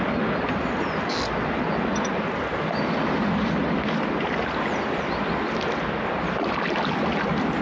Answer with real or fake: real